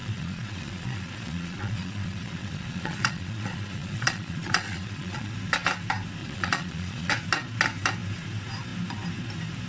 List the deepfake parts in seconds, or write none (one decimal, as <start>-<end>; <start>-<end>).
0.0-5.3; 6.2-7.1